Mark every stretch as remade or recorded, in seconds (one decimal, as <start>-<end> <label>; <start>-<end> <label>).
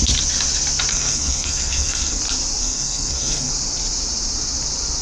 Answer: 0.0-0.9 recorded; 0.9-2.2 remade; 2.2-2.6 recorded; 2.6-3.5 remade; 3.5-5.0 recorded